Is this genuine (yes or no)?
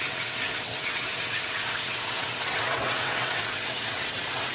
no